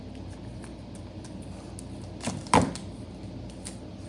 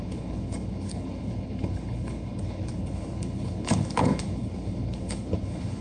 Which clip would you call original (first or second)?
first